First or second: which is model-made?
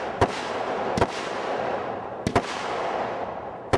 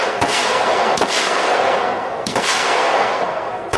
second